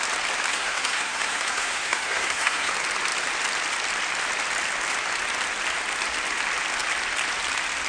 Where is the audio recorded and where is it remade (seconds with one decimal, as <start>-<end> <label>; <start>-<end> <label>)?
0.0-0.5 recorded; 0.5-2.7 remade; 2.7-7.9 recorded